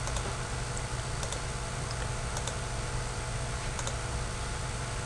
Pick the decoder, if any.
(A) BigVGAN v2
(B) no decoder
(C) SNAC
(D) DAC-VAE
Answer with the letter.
B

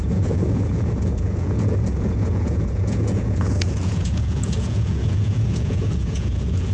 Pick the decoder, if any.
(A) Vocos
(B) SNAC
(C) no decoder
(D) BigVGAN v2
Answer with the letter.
A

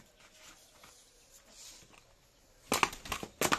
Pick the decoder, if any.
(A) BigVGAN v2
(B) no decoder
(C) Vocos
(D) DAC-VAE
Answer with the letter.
B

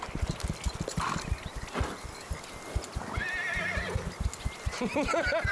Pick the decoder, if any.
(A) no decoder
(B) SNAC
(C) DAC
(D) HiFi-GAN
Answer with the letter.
A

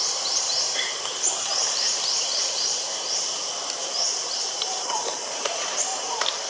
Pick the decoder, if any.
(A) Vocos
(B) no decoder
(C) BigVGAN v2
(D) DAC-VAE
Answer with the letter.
C